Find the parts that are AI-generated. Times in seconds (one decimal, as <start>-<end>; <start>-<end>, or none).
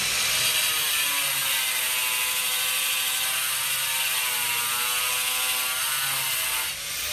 none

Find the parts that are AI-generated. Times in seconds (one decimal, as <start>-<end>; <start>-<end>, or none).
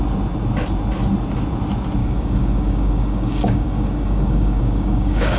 2.0-5.4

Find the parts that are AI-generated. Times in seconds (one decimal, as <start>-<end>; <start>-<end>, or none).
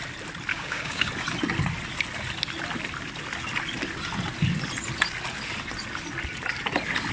0.5-1.1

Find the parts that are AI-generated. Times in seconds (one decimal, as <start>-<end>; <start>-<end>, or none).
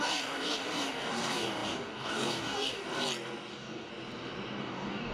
0.0-2.8; 3.5-3.9; 4.6-5.1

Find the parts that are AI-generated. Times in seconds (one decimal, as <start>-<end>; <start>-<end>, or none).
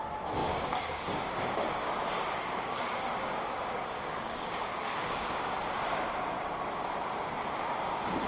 0.4-5.4